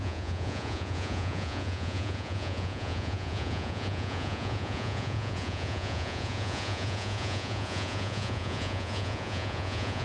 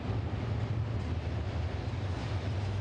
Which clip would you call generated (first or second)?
first